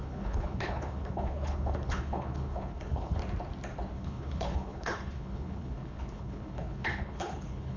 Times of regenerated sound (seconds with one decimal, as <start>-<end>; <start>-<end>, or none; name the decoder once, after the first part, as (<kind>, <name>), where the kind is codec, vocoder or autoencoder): 0.0-3.2 (codec, HILCodec); 3.9-7.8